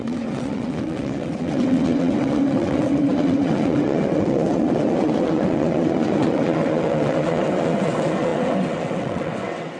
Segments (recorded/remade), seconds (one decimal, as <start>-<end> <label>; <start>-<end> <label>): 0.0-9.8 remade